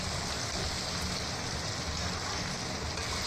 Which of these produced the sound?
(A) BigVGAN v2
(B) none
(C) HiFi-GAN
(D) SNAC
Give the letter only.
A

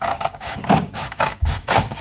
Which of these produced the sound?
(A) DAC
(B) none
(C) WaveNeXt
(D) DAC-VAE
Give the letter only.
A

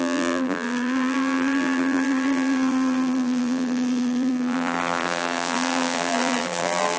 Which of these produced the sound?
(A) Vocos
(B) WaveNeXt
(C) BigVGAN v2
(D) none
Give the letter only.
C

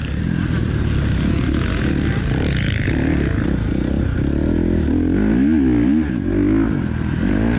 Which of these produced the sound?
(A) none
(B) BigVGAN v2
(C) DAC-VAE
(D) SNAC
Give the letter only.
A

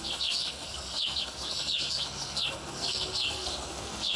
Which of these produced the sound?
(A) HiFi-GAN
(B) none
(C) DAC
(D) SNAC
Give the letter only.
D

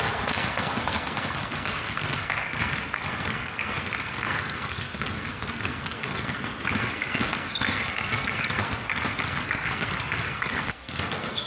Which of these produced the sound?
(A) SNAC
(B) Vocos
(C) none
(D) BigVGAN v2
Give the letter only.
A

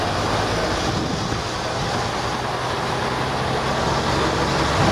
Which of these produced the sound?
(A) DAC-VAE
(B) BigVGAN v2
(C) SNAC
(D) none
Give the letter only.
D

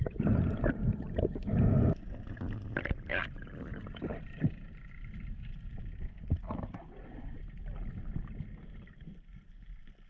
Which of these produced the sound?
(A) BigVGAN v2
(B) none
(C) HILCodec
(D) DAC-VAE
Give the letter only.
B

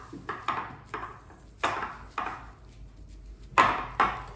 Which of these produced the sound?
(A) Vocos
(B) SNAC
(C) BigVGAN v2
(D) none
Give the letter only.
D